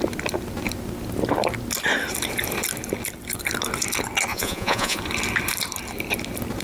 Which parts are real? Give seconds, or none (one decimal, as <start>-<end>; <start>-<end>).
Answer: 0.0-4.3; 5.0-6.6